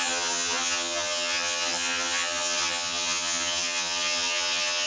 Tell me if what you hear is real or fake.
fake